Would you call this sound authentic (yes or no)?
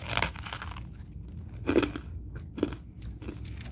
yes